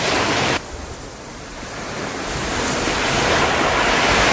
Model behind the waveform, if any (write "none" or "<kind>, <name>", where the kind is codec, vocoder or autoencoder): none